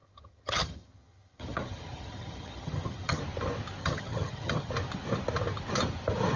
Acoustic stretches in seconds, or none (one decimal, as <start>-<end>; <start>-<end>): 3.2-3.8; 4.7-6.4